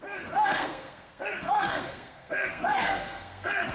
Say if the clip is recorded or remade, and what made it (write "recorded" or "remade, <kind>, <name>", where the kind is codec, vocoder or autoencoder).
remade, codec, SNAC